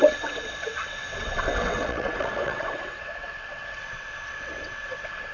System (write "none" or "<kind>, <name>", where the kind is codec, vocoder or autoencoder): vocoder, WaveNeXt